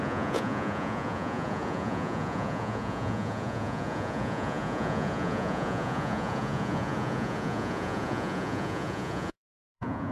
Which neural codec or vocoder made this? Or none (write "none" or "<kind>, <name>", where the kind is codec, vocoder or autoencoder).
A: vocoder, Vocos